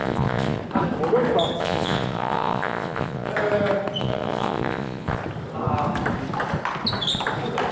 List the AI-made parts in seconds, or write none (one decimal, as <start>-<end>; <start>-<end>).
0.0-0.6; 1.6-3.3; 4.0-5.2